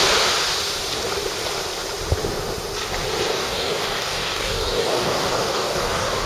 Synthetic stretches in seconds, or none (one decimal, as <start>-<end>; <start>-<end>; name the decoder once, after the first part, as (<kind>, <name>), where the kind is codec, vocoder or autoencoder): 3.3-6.3 (codec, DAC)